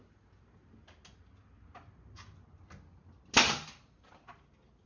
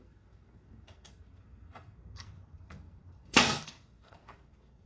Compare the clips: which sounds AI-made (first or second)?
second